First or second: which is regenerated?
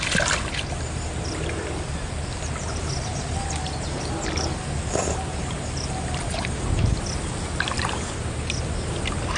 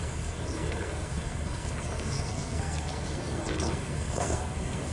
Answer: second